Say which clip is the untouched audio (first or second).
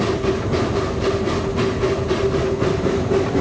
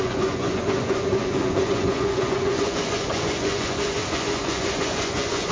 first